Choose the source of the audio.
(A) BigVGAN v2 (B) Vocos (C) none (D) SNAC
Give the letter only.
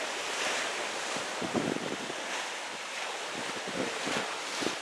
C